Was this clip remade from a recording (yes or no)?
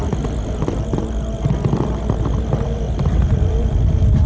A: no